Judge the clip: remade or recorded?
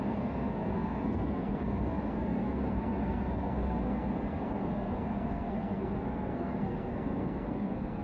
remade